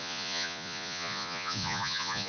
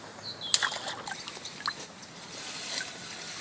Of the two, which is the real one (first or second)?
second